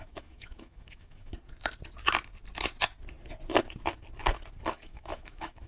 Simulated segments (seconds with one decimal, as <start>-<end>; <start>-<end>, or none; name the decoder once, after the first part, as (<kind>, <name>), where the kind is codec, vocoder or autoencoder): 0.0-1.3 (autoencoder, DAC-VAE); 4.7-5.7